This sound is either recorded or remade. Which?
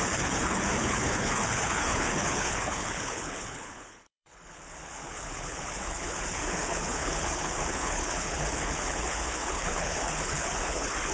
remade